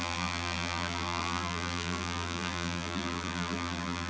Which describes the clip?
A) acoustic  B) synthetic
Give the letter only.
B